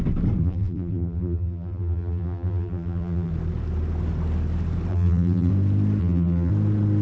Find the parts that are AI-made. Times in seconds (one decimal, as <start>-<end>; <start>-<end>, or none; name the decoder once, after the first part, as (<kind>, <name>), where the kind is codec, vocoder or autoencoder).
0.4-3.3 (vocoder, BigVGAN v2); 4.9-5.5; 6.0-6.5